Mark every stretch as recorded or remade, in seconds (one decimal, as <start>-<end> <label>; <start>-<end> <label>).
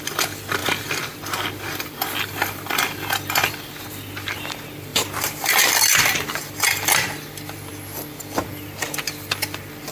0.0-7.7 remade; 7.7-8.2 recorded; 8.2-9.9 remade